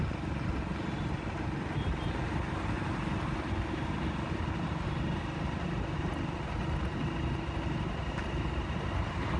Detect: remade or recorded recorded